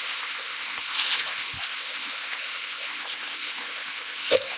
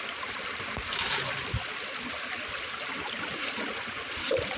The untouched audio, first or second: second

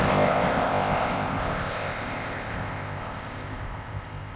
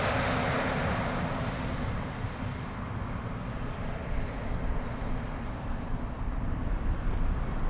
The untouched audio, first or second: second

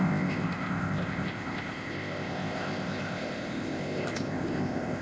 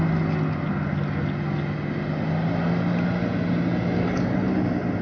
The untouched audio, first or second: second